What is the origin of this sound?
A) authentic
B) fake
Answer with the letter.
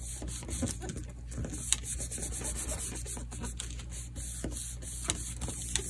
A